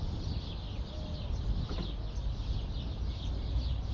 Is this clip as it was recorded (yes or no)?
yes